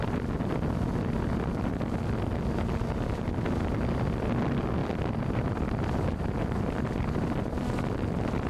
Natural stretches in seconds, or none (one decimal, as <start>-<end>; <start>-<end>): 0.0-4.8; 7.0-8.5